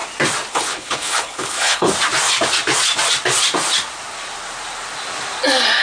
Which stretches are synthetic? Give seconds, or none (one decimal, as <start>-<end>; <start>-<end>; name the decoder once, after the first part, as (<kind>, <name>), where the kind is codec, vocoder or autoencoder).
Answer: 0.5-1.9 (codec, HILCodec)